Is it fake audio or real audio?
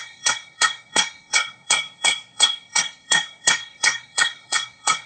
fake